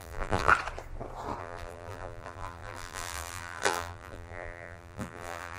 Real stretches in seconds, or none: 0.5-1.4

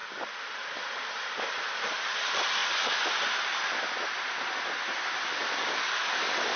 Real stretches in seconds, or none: 0.0-6.6

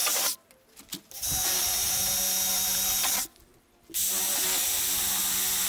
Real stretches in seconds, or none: 0.0-5.7